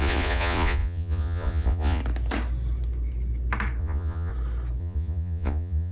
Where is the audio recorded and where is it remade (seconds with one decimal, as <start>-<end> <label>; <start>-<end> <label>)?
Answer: 0.0-2.0 remade; 2.0-3.8 recorded; 3.8-4.3 remade; 4.3-4.8 recorded; 4.8-5.9 remade